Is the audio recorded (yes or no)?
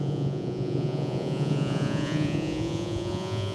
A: no